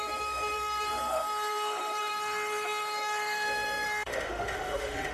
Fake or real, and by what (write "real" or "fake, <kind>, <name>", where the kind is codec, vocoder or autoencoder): fake, autoencoder, DAC-VAE